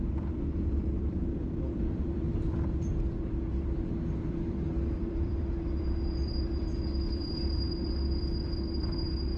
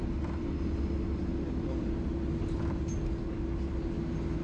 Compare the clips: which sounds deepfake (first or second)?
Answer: first